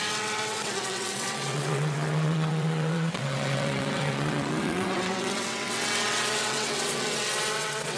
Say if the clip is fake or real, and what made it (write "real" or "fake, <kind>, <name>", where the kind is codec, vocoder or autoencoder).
fake, vocoder, WaveNeXt